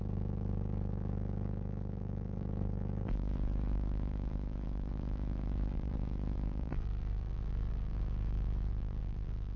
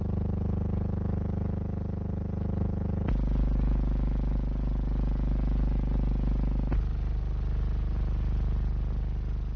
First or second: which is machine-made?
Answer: first